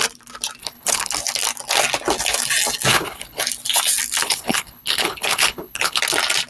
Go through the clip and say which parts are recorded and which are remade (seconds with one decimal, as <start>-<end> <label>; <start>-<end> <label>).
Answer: 0.0-0.6 recorded; 0.6-1.1 remade; 1.1-2.9 recorded; 2.9-3.4 remade; 3.4-4.2 recorded; 4.2-6.0 remade; 6.0-6.5 recorded